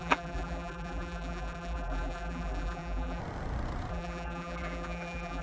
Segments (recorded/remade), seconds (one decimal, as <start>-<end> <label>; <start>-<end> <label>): 0.0-3.2 remade; 3.2-3.9 recorded; 3.9-5.4 remade